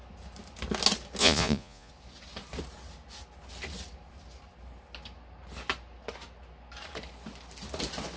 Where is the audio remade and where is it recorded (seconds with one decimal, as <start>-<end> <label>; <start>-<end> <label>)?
0.0-1.2 recorded; 1.2-1.9 remade; 1.9-8.2 recorded